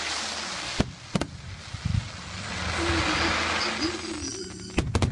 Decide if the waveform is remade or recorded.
recorded